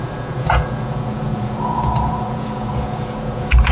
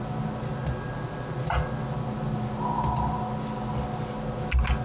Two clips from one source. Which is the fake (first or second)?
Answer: first